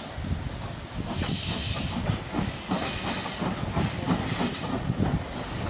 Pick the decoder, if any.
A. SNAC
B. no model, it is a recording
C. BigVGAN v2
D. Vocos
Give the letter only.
B